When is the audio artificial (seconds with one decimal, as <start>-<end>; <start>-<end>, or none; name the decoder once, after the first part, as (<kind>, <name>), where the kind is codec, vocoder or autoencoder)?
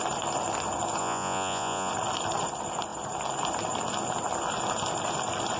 1.0-1.9 (vocoder, Vocos)